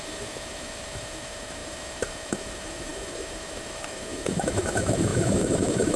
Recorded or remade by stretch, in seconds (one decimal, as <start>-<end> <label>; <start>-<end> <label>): 0.0-6.0 remade